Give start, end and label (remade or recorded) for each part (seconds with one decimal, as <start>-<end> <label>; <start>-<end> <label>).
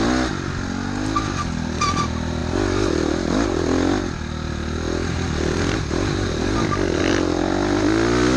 0.0-8.4 recorded